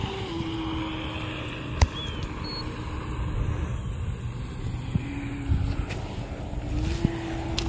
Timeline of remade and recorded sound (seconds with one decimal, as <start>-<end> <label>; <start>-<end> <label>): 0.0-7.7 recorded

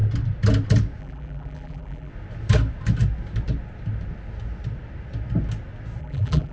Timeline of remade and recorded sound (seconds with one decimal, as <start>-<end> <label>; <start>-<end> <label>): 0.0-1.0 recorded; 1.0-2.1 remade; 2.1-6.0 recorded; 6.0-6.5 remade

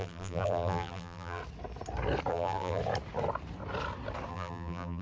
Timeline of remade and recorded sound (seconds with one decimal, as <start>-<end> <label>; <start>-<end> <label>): 0.0-1.4 remade; 1.4-2.3 recorded; 2.3-2.8 remade; 2.8-4.3 recorded; 4.3-5.0 remade